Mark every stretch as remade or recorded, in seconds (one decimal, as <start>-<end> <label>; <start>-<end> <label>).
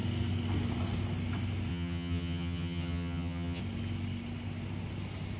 0.0-1.7 recorded; 1.7-3.6 remade; 3.6-5.4 recorded